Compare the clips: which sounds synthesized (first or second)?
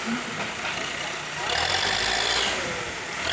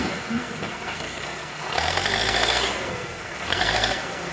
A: second